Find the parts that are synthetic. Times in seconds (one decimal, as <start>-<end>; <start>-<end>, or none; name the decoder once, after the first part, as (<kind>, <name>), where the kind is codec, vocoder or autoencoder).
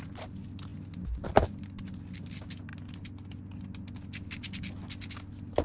none